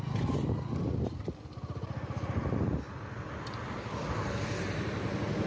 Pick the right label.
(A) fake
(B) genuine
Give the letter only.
B